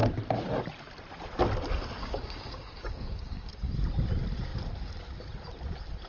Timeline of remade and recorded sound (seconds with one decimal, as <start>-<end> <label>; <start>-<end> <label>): 0.0-2.0 recorded; 2.0-3.5 remade; 3.5-6.1 recorded

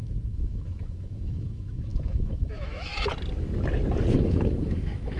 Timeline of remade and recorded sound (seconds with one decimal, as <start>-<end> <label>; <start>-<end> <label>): 0.0-2.9 remade; 2.9-4.2 recorded; 4.2-5.2 remade

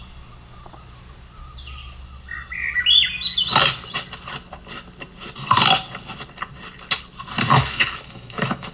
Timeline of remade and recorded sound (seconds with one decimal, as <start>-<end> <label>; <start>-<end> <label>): 0.0-7.5 recorded; 7.5-8.7 remade

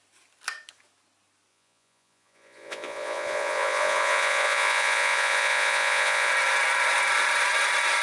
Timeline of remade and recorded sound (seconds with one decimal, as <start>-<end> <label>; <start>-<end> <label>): 0.0-1.5 recorded; 1.5-6.3 remade; 6.3-8.0 recorded

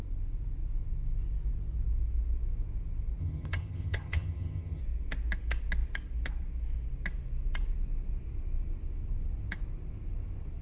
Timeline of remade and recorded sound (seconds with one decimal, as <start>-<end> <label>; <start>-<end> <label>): 0.0-3.2 recorded; 3.2-4.8 remade; 4.8-10.6 recorded

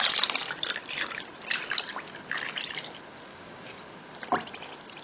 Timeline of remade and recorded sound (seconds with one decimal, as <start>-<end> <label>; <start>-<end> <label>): 0.0-3.3 recorded; 3.3-3.8 remade; 3.8-5.0 recorded

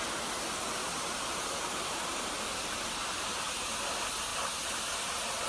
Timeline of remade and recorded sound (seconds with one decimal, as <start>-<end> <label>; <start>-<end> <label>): 0.0-0.8 recorded; 0.8-2.3 remade; 2.3-3.0 recorded; 3.0-3.7 remade; 3.7-5.5 recorded